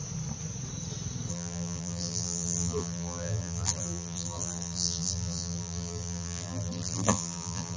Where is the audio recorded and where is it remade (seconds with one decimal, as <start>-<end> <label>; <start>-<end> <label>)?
0.0-1.3 recorded; 1.3-7.8 remade